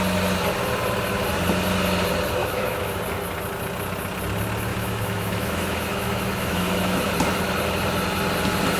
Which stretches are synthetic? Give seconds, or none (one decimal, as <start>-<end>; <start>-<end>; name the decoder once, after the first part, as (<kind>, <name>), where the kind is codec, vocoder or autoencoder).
2.4-3.0 (autoencoder, DAC-VAE); 4.7-7.1

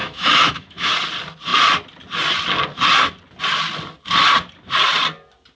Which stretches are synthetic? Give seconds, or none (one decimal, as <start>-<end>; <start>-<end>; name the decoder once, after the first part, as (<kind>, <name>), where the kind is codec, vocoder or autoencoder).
0.0-0.9 (autoencoder, DAC-VAE)